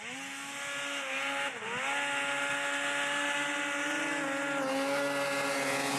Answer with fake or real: real